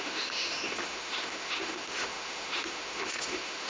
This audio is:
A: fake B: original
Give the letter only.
A